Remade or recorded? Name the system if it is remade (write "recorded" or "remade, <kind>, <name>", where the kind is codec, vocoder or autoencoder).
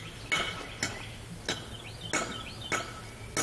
recorded